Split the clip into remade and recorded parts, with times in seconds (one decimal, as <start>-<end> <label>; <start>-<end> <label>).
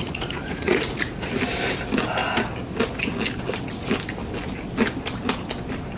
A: 0.0-1.3 remade; 1.3-6.0 recorded